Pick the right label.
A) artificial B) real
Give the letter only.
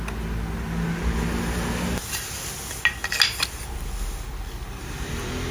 B